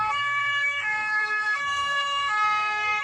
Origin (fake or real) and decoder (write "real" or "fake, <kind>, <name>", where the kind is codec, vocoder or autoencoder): fake, codec, SNAC